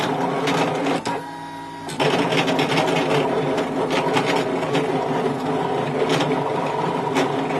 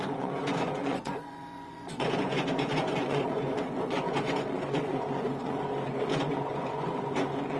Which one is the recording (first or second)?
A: first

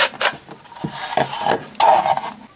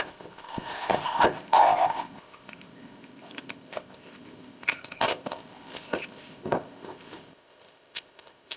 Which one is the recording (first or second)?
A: first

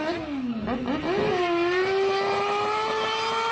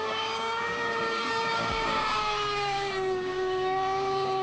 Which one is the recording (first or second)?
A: first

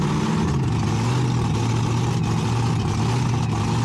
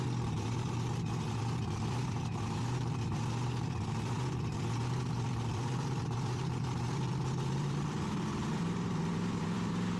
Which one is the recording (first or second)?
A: first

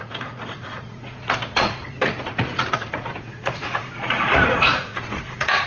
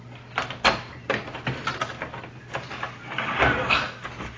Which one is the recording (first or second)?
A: second